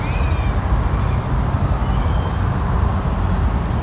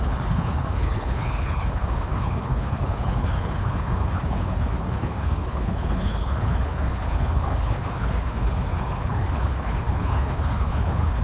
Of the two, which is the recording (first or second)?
first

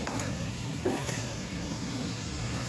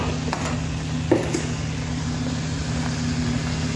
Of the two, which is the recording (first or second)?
second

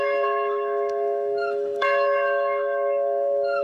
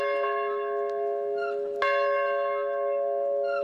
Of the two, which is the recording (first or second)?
second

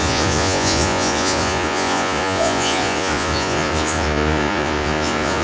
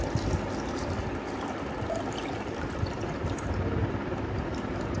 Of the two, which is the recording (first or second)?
second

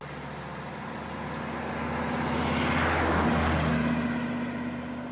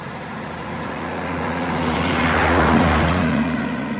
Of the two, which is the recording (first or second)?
first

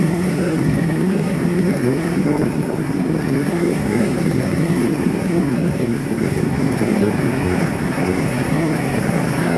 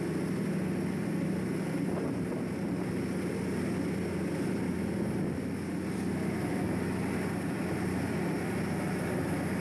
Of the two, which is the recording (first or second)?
second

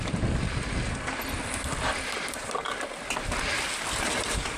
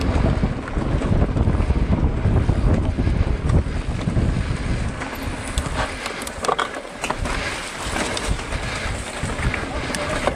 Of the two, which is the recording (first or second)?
second